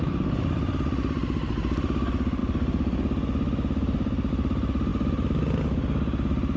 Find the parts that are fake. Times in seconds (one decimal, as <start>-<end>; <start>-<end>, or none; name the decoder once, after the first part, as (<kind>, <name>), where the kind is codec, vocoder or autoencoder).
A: none